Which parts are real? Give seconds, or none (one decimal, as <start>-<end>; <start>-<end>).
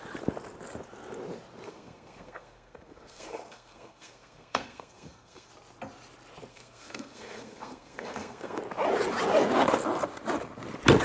0.0-1.7; 5.5-6.5; 8.6-11.0